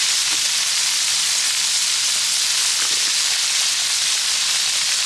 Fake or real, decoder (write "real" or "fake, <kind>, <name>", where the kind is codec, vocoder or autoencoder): real